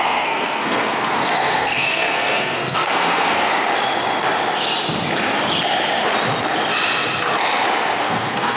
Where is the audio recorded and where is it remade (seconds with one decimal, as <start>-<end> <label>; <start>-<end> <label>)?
0.0-3.5 remade; 3.5-8.0 recorded; 8.0-8.6 remade